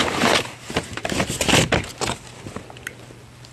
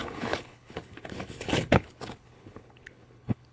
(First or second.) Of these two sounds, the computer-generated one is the second